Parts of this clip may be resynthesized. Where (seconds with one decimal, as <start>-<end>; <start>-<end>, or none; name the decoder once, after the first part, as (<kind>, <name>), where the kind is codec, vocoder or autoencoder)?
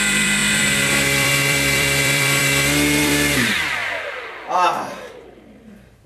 0.0-2.4 (vocoder, BigVGAN v2); 3.0-3.8; 5.1-6.1